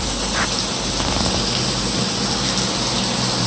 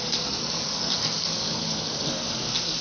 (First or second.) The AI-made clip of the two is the second